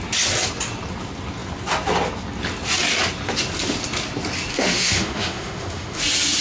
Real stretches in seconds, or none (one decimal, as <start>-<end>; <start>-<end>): 0.0-4.5; 6.0-6.4